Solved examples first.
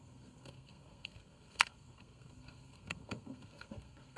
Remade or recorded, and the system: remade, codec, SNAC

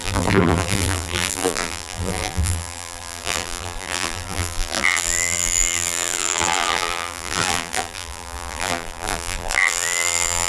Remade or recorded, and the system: remade, vocoder, BigVGAN v2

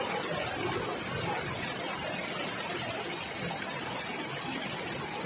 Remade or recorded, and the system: recorded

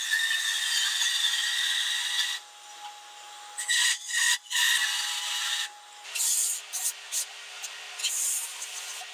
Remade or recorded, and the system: recorded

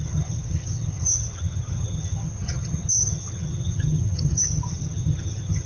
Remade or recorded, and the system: remade, vocoder, HiFi-GAN